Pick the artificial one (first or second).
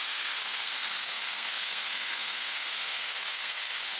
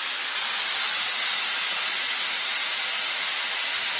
first